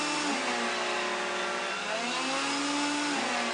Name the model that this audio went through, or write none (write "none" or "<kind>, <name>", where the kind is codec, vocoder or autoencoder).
none